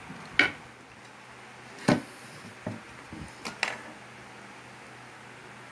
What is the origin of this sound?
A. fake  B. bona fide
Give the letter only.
B